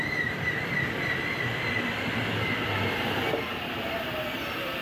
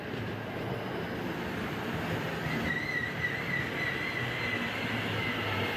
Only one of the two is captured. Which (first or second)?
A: second